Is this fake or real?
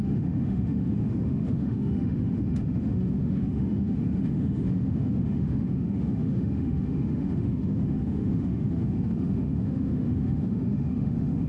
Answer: fake